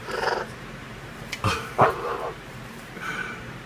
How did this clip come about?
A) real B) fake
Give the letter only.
B